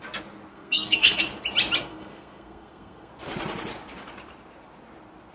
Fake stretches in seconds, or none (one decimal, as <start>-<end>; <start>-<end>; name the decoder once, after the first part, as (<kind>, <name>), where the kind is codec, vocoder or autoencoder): 0.5-1.2 (codec, SNAC); 1.8-3.1